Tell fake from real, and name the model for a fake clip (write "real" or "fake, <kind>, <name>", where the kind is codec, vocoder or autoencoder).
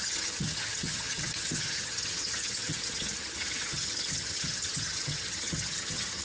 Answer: fake, vocoder, HiFi-GAN